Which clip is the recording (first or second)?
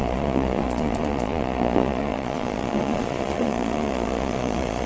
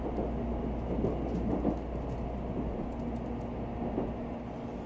second